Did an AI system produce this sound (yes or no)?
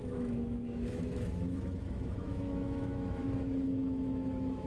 yes